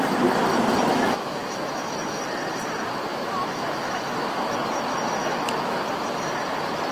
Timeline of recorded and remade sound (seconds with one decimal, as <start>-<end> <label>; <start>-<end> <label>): 0.0-0.9 recorded; 0.9-2.2 remade; 2.2-3.1 recorded; 3.1-4.7 remade; 4.7-5.2 recorded; 5.2-6.0 remade; 6.0-6.9 recorded